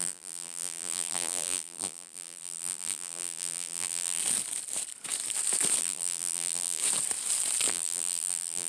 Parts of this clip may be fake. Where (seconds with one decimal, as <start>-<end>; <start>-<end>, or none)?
0.0-4.2; 5.8-6.8; 7.7-8.7